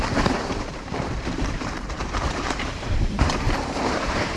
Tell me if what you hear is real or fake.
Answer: fake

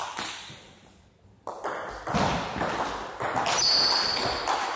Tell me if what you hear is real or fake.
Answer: real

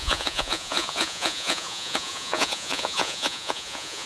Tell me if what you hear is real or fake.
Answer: fake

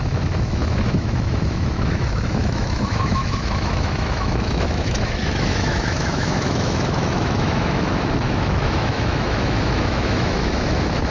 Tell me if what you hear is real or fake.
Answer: fake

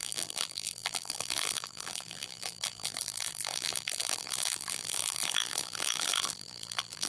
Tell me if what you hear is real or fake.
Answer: fake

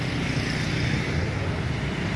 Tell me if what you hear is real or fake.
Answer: real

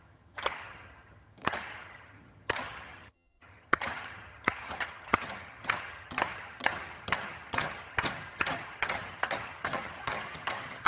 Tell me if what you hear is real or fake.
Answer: fake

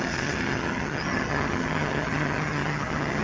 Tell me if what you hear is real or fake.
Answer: fake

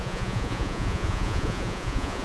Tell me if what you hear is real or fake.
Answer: fake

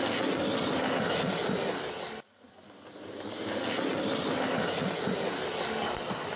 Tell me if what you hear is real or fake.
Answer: real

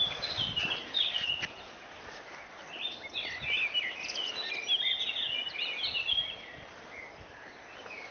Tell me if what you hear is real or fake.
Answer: real